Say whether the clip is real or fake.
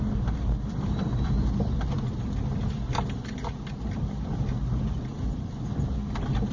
real